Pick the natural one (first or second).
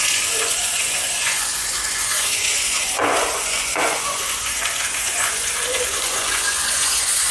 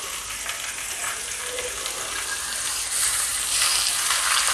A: second